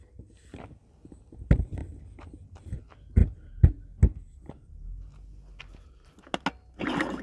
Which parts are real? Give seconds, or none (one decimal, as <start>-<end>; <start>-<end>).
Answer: 0.0-7.2